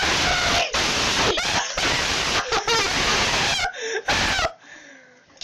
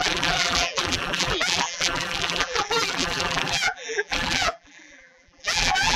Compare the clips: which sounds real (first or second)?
first